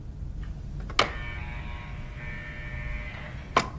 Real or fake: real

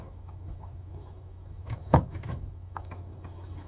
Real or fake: fake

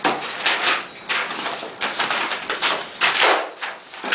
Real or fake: real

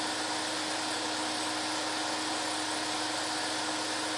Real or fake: real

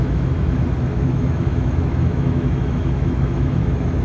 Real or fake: fake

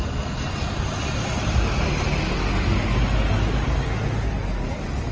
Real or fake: real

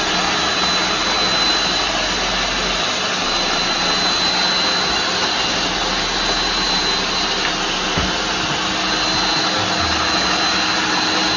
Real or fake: real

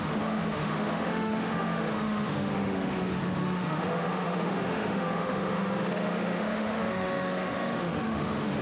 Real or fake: fake